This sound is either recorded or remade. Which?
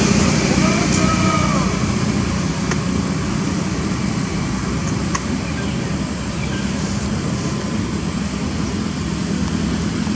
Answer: recorded